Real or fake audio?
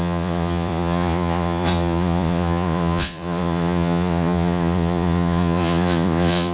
fake